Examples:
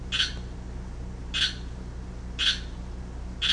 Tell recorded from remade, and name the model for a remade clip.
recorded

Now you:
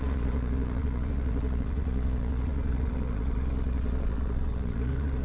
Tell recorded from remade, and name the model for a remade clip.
remade, vocoder, Vocos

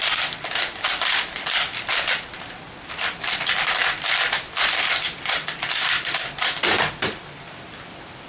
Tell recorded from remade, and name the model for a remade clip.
remade, vocoder, BigVGAN v2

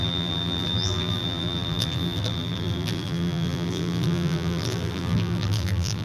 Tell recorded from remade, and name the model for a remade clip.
remade, vocoder, BigVGAN v2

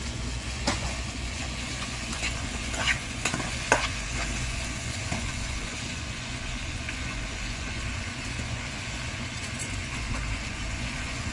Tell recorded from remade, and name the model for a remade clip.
remade, vocoder, Vocos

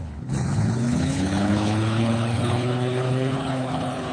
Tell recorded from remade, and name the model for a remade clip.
remade, codec, HILCodec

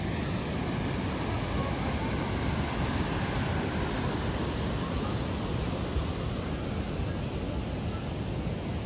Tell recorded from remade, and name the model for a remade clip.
recorded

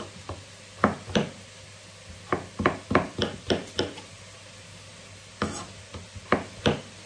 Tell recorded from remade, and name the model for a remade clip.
recorded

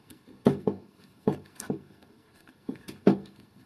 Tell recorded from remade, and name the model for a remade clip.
remade, codec, SNAC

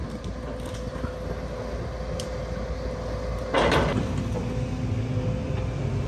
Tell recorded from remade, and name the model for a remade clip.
recorded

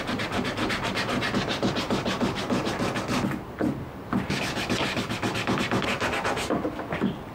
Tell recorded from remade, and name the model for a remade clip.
recorded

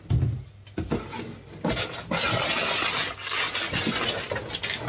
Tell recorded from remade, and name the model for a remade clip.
recorded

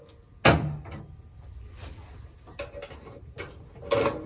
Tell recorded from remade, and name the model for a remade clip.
recorded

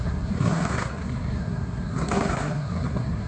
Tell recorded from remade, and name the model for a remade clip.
remade, codec, SNAC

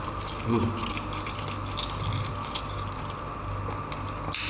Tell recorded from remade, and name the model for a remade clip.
recorded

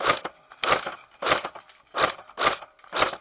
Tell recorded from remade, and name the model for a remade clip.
recorded